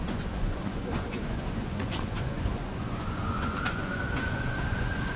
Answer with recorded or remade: remade